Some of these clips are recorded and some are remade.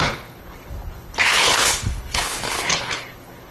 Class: remade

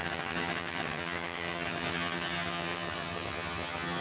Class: remade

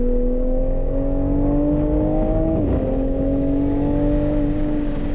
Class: remade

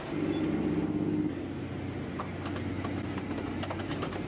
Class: recorded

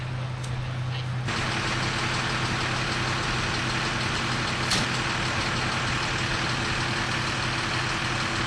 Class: recorded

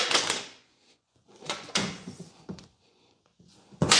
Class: remade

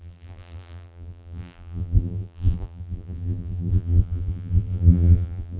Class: remade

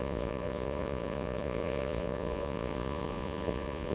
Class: remade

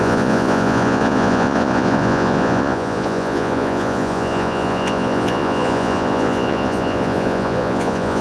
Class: remade